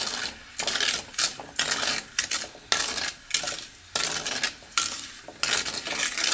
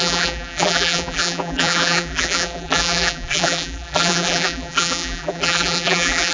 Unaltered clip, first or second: first